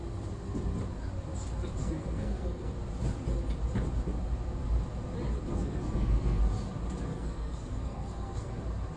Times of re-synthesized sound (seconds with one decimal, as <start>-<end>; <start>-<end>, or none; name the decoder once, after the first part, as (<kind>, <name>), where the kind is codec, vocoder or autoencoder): 1.8-2.7 (codec, SNAC); 5.5-6.4; 7.1-8.5